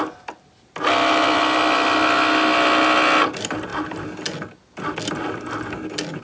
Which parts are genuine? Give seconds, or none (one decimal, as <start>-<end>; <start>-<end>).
0.0-6.2